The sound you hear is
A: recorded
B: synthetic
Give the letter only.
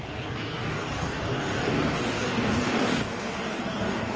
B